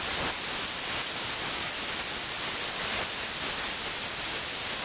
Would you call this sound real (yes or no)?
yes